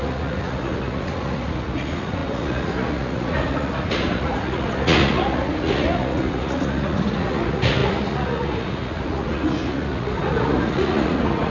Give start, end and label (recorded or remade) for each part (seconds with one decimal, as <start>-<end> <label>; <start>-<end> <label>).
0.0-11.5 remade